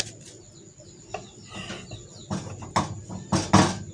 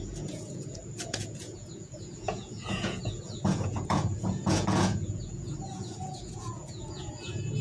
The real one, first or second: first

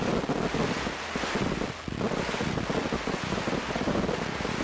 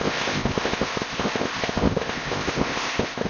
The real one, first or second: first